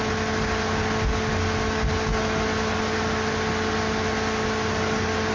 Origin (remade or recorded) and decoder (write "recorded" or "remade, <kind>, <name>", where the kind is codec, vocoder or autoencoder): recorded